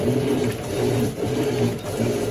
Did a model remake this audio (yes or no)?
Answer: no